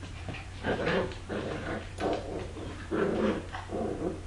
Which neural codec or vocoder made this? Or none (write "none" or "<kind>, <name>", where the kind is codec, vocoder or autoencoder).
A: vocoder, BigVGAN v2